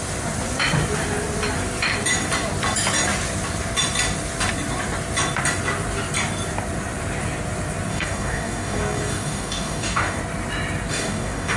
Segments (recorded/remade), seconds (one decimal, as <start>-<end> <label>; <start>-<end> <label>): 0.0-7.9 recorded; 7.9-10.2 remade; 10.2-10.9 recorded; 10.9-11.6 remade